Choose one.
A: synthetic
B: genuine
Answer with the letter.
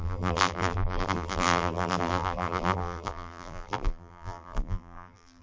A